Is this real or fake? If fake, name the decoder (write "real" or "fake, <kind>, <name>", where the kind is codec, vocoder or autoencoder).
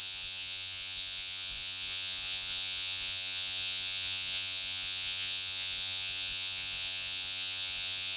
fake, vocoder, Vocos